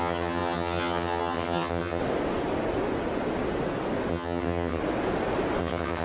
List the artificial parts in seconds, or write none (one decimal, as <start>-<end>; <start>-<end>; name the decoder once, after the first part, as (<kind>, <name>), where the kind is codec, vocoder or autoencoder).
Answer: 0.0-2.0 (vocoder, HiFi-GAN); 4.1-4.8; 5.6-6.0